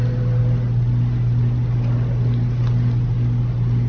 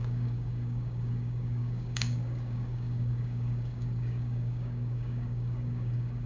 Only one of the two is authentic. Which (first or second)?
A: first